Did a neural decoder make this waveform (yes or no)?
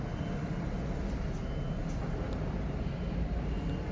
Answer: no